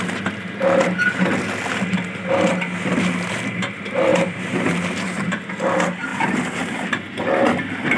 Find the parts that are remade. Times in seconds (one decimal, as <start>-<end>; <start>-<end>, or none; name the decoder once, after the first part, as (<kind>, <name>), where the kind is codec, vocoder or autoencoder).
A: 4.1-5.5 (vocoder, BigVGAN v2); 6.1-6.9